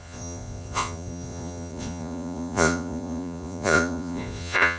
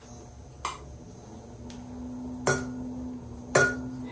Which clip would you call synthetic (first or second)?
first